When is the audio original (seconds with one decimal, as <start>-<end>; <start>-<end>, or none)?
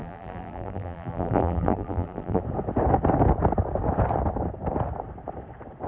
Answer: 2.4-5.9